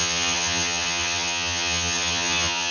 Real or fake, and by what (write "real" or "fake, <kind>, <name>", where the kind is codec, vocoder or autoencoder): fake, vocoder, HiFi-GAN